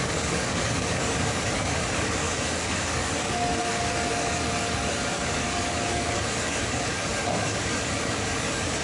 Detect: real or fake fake